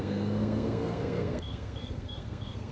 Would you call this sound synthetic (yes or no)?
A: yes